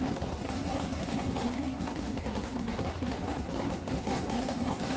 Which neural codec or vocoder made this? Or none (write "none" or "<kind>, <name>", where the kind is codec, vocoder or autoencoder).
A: codec, SNAC